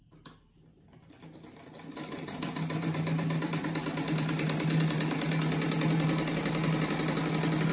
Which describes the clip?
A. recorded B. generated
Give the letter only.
A